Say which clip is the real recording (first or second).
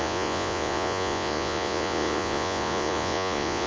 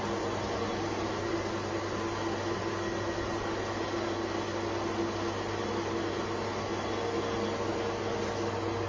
second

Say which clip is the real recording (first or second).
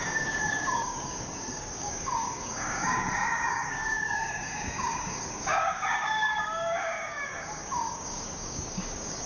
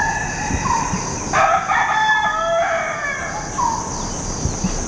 second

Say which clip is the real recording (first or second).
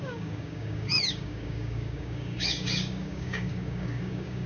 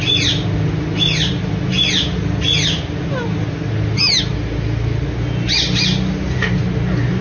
second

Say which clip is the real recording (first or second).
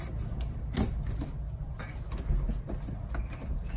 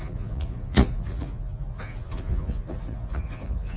first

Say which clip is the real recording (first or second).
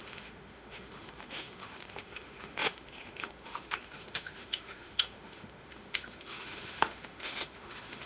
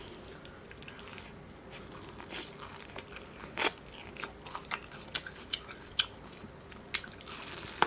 second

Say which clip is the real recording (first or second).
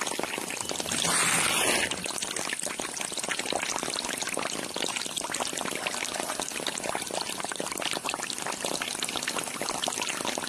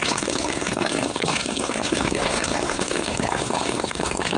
first